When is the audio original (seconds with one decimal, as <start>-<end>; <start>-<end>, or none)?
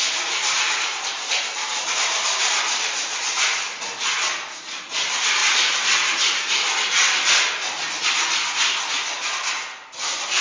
3.3-5.4; 6.5-10.4